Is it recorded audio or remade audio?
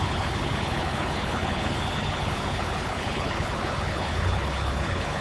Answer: remade